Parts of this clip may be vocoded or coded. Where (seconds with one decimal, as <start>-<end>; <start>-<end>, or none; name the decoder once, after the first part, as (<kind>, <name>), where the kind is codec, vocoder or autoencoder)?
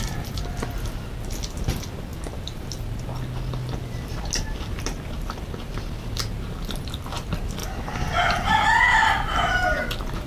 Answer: none